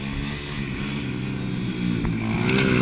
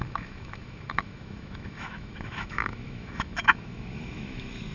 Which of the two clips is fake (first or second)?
second